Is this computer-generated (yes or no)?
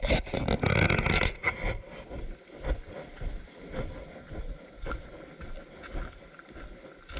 no